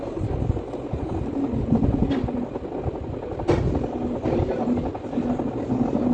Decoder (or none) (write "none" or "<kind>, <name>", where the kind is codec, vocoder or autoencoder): none